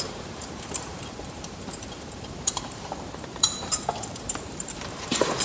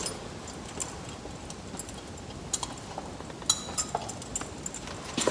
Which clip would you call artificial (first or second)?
first